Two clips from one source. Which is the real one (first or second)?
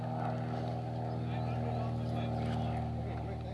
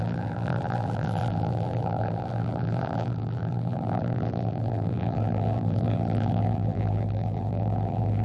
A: first